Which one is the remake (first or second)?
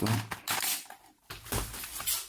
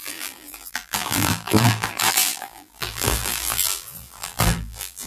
second